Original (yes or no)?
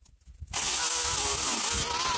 yes